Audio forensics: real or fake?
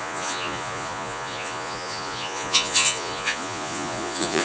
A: fake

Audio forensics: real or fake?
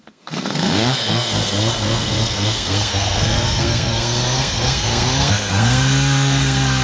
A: fake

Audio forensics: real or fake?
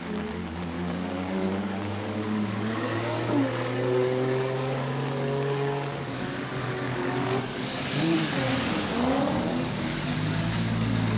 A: fake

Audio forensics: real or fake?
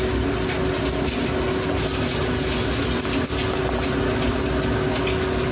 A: real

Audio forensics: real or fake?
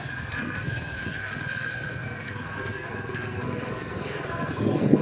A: fake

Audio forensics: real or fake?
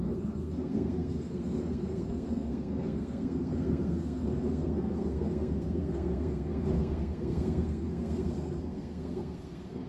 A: fake